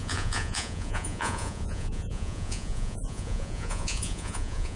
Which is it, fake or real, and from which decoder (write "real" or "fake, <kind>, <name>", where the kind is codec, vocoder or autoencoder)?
fake, vocoder, Vocos